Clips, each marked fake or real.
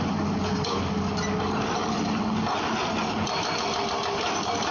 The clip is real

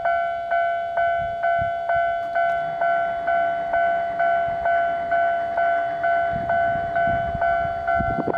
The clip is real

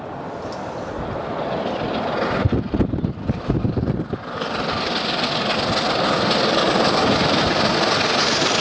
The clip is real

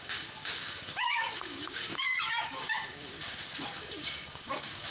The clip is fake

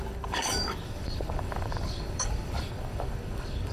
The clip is fake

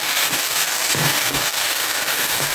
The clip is fake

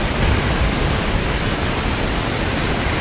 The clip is real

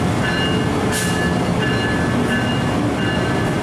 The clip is real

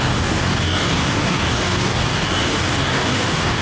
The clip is fake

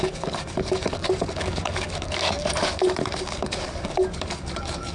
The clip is fake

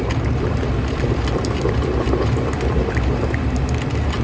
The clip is real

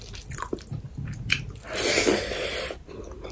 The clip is real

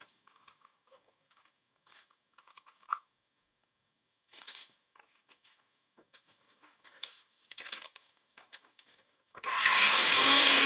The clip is fake